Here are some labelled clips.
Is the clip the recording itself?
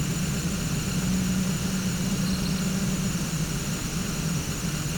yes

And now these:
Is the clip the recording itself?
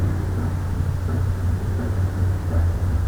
yes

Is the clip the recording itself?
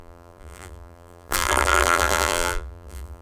no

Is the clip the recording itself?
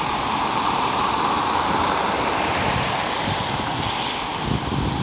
yes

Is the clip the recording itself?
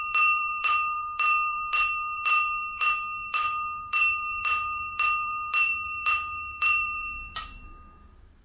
no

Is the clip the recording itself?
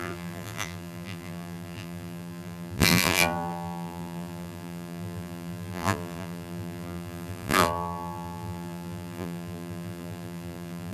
no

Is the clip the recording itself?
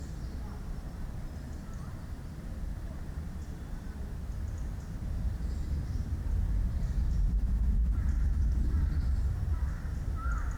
no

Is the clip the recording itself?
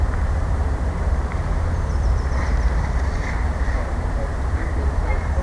no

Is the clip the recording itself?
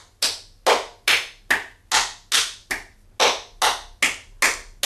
yes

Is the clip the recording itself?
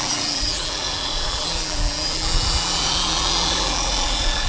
no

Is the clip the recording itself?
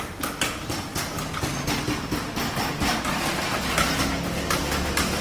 yes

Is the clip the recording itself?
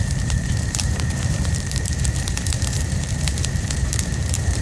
no